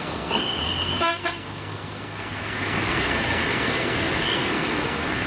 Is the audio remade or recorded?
remade